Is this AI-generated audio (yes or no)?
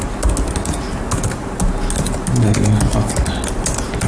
no